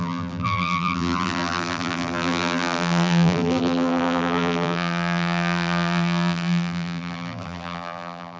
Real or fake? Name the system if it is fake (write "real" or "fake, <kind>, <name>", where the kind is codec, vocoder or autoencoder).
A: fake, vocoder, BigVGAN v2